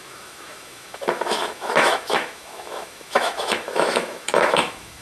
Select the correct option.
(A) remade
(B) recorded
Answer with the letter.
A